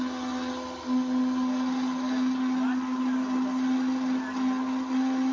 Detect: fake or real real